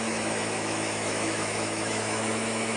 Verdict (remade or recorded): remade